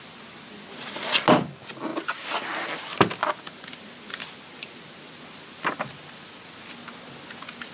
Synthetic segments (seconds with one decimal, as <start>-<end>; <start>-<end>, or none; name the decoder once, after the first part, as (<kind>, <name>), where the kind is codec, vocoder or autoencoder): none